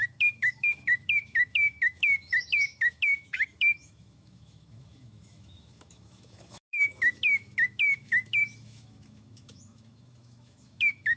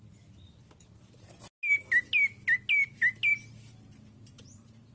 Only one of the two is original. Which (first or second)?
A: second